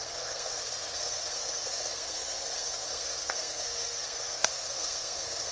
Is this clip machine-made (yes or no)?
yes